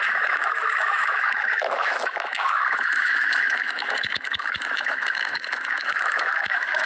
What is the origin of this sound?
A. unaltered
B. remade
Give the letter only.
B